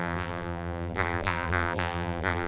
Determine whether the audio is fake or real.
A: fake